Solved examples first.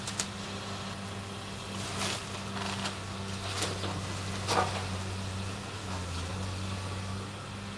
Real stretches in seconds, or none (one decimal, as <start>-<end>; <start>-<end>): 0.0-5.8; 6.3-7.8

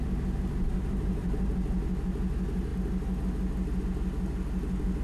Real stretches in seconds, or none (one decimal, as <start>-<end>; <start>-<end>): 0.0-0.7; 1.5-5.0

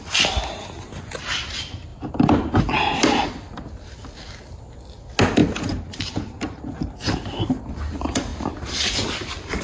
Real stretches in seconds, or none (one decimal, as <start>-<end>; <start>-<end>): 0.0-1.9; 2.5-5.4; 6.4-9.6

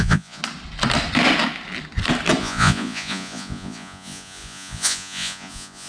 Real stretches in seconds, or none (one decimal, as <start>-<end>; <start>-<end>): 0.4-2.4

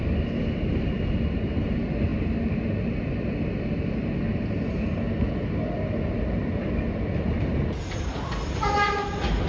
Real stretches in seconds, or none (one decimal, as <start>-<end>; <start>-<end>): 0.0-9.5

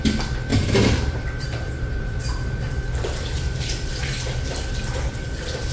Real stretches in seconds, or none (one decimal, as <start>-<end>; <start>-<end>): 0.0-0.5; 3.9-5.7

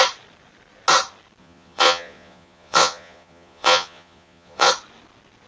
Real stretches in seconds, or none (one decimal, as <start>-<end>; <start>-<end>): 0.0-1.4; 4.7-5.5

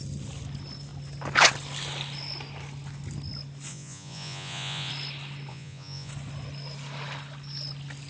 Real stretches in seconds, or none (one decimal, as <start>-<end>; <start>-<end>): 0.0-3.7; 4.9-5.5; 6.1-8.1